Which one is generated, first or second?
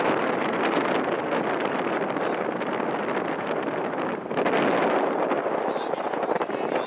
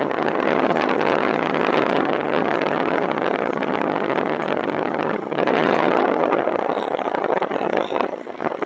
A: second